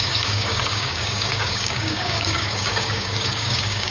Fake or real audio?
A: fake